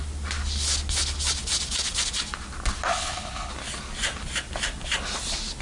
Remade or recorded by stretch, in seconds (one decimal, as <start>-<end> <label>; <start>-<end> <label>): 0.0-2.9 recorded; 2.9-3.5 remade; 3.5-5.6 recorded